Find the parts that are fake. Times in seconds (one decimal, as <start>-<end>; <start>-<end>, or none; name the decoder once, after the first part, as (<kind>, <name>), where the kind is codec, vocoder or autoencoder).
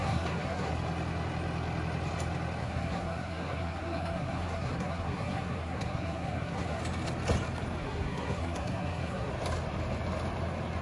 0.0-0.7 (codec, SNAC); 2.6-6.8; 7.8-9.3